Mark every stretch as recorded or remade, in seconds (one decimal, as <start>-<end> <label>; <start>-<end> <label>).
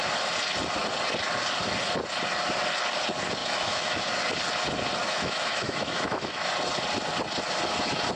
0.0-3.4 recorded; 3.4-4.1 remade; 4.1-5.0 recorded; 5.0-6.5 remade; 6.5-8.2 recorded